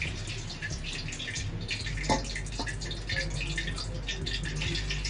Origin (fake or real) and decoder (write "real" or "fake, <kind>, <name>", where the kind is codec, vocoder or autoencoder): real